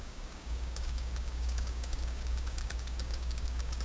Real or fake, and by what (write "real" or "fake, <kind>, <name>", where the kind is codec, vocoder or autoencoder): fake, codec, DAC